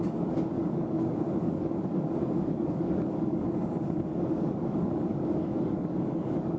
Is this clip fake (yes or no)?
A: yes